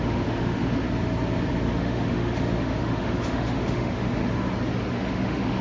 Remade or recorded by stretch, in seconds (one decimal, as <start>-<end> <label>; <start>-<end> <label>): 0.0-0.8 remade; 0.8-1.5 recorded; 1.5-4.2 remade; 4.2-4.9 recorded; 4.9-5.6 remade

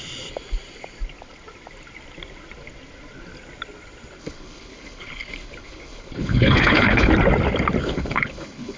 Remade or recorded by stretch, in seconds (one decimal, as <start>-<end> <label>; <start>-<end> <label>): 0.0-4.2 recorded; 4.2-7.1 remade; 7.1-7.8 recorded; 7.8-8.8 remade

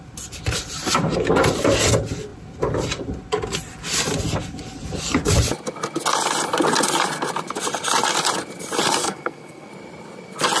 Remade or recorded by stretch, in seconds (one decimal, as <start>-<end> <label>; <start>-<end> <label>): 0.0-9.0 recorded; 9.0-9.7 remade; 9.7-10.6 recorded

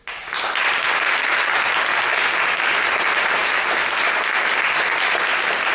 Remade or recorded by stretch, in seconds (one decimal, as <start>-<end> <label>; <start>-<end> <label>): 0.0-5.7 recorded

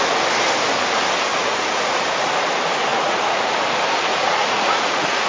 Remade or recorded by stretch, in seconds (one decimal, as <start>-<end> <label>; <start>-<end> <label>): 0.0-1.3 recorded; 1.3-2.3 remade; 2.3-2.9 recorded; 2.9-3.5 remade; 3.5-4.1 recorded; 4.1-5.3 remade

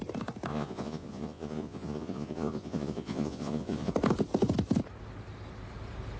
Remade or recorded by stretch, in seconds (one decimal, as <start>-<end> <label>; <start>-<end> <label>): 0.0-0.5 recorded; 0.5-3.9 remade; 3.9-6.2 recorded

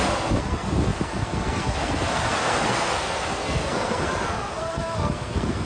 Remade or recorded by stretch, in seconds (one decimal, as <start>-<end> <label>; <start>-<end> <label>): 0.0-5.6 remade

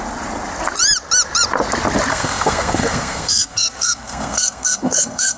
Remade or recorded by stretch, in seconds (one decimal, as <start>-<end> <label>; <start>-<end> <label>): 0.0-2.1 recorded; 2.1-5.4 remade